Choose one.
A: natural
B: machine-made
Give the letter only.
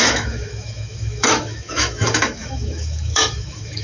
B